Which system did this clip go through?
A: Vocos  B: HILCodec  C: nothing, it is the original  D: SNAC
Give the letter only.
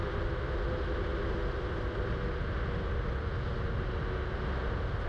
C